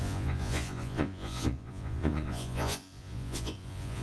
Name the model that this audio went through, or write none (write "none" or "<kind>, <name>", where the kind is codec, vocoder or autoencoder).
vocoder, Vocos